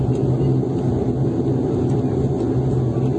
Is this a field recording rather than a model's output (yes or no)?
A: yes